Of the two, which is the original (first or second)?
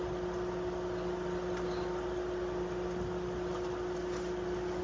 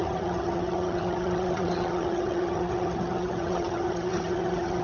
first